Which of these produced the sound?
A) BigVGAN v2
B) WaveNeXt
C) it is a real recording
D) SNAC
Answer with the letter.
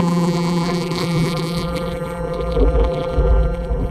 A